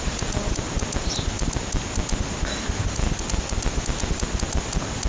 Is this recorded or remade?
recorded